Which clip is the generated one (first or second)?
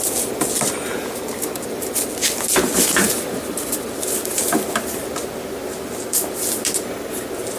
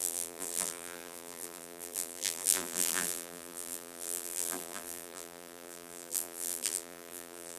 second